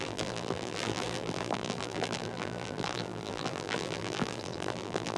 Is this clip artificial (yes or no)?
yes